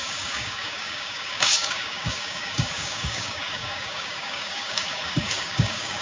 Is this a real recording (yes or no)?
no